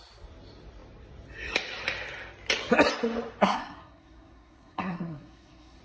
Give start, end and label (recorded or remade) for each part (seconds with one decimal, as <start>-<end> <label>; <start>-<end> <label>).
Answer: 0.0-3.4 recorded; 3.4-5.8 remade

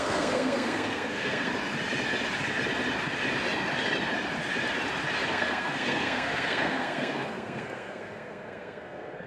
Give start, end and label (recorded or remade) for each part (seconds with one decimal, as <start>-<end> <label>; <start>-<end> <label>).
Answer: 0.0-1.5 remade; 1.5-5.3 recorded; 5.3-9.3 remade

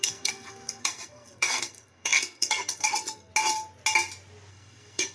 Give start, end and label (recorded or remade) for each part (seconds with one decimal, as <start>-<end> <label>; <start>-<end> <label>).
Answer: 0.0-3.3 remade; 3.3-4.5 recorded; 4.5-5.1 remade

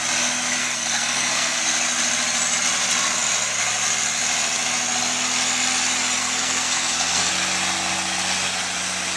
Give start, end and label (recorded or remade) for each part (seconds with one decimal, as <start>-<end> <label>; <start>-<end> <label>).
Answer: 0.0-0.6 recorded; 0.6-1.6 remade; 1.6-6.2 recorded; 6.2-7.3 remade; 7.3-9.2 recorded

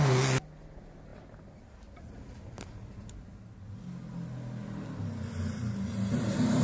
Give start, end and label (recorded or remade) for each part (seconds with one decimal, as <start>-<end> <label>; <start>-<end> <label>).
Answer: 0.0-6.6 recorded

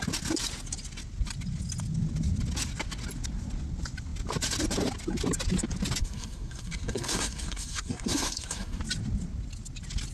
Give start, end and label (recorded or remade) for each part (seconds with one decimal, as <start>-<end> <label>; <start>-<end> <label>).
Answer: 0.0-6.0 recorded; 6.0-8.8 remade; 8.8-10.1 recorded

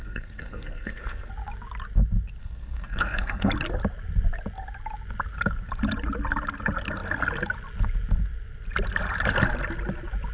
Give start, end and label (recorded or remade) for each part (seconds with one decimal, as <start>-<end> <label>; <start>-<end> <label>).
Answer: 0.0-1.3 remade; 1.3-2.4 recorded; 2.4-3.5 remade; 3.5-10.3 recorded